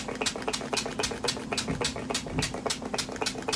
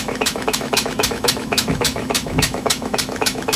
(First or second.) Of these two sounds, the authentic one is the first